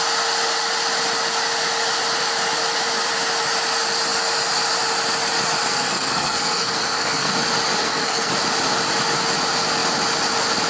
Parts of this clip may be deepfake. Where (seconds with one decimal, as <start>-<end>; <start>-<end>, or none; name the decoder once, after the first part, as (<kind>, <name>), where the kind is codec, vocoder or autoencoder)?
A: 5.7-7.3 (codec, SNAC); 7.8-8.3